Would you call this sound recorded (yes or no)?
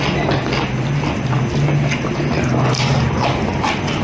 yes